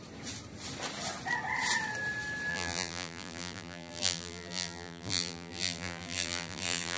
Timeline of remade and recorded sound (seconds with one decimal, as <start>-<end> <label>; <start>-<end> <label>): 0.0-2.5 recorded; 2.5-7.0 remade